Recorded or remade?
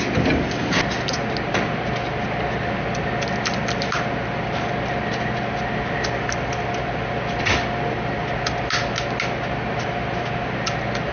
recorded